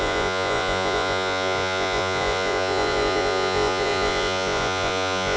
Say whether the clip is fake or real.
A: fake